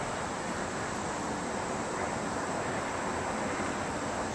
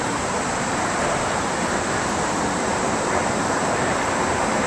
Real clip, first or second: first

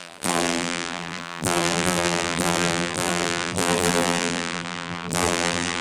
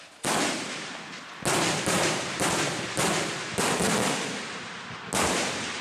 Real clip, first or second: second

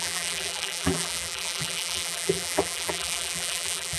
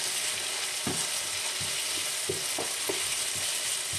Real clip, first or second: second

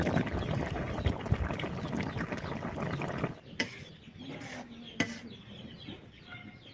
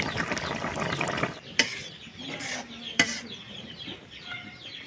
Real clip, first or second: first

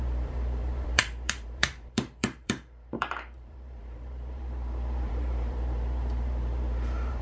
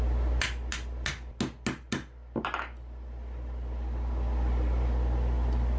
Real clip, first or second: second